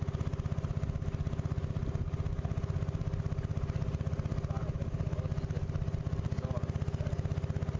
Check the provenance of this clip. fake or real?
real